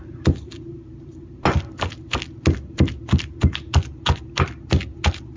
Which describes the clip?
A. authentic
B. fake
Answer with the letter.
A